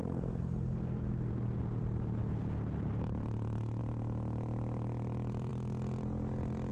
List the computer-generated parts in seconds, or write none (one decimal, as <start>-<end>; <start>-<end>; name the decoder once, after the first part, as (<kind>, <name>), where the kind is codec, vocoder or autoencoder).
0.0-1.3 (codec, SNAC)